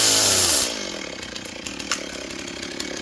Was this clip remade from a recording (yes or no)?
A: no